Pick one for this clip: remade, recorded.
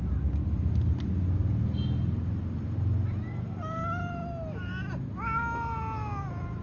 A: recorded